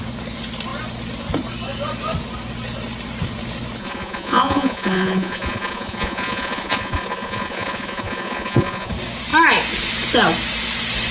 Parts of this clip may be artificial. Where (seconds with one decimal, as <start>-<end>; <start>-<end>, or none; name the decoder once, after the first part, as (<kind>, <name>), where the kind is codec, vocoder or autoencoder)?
3.8-8.9 (vocoder, Vocos)